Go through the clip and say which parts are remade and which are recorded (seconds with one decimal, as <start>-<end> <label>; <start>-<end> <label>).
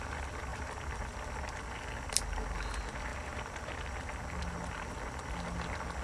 0.0-6.0 recorded